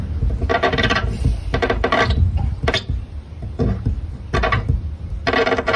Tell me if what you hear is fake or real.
fake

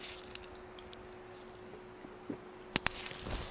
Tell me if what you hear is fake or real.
real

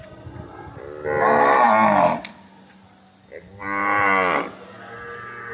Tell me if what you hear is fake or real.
real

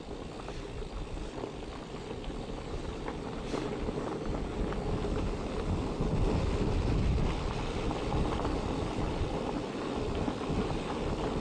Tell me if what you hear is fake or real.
real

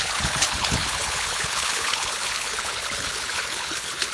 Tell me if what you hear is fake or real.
fake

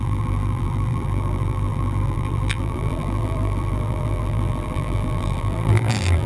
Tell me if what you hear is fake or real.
fake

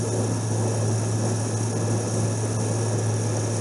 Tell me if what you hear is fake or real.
real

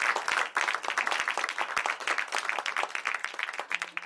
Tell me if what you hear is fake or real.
real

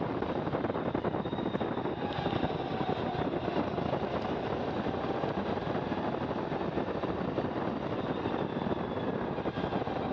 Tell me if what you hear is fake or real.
real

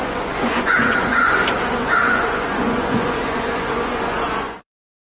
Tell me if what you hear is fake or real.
fake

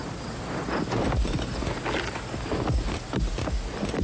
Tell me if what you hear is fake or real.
real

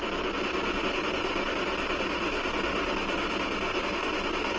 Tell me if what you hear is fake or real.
real